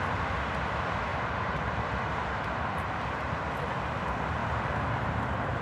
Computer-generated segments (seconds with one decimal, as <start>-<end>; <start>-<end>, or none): 1.1-3.4; 4.4-5.6